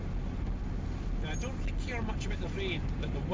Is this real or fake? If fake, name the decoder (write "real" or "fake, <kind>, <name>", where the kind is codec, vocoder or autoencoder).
real